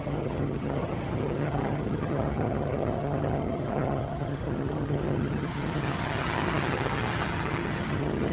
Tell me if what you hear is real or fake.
fake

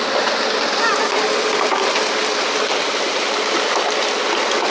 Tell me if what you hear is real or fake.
real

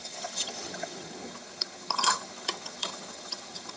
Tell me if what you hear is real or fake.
fake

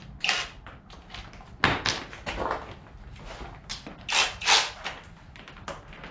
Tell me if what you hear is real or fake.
real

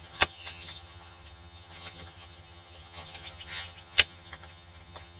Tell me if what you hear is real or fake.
fake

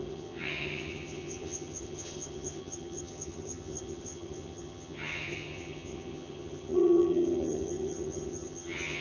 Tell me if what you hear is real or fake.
fake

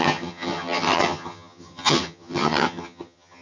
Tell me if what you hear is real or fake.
fake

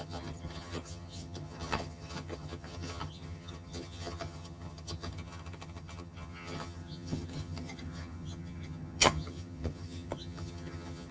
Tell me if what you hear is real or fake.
fake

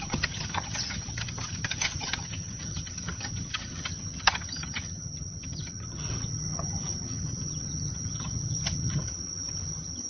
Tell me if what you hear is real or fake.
fake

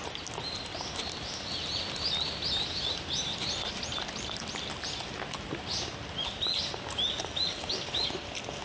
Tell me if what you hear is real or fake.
real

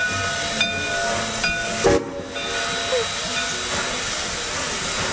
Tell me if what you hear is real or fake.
real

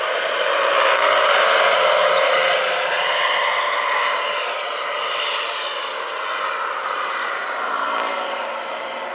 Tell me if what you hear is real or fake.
real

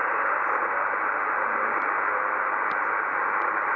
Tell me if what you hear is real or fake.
real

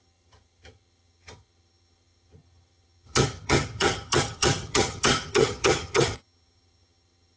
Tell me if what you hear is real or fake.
fake